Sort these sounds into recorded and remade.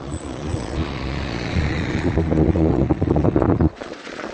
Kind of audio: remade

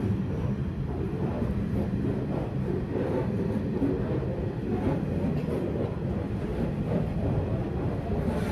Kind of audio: recorded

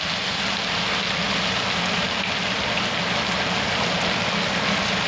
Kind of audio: recorded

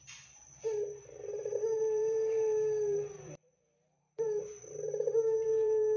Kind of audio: remade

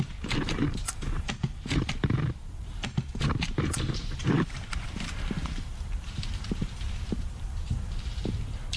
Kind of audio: remade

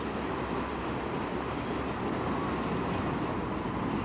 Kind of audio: recorded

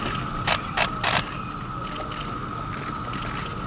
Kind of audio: recorded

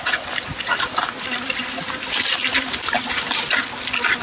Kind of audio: recorded